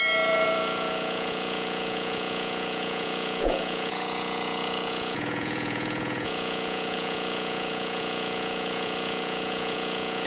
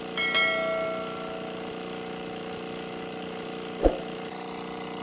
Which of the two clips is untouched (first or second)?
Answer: second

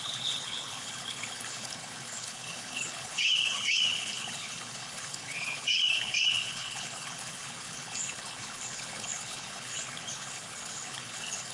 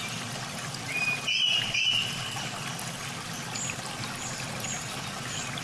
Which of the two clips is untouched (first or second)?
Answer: second